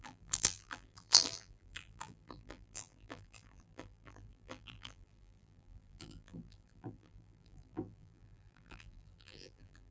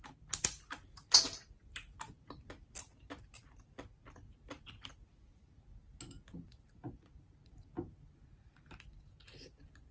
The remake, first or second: first